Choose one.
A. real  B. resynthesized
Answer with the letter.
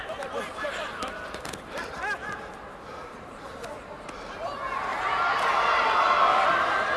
A